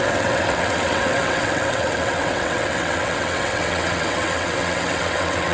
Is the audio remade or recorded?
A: remade